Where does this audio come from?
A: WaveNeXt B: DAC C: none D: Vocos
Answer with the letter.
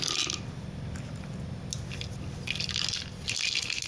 C